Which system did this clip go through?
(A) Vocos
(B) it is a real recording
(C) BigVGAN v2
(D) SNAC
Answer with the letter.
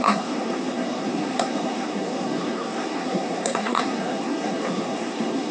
D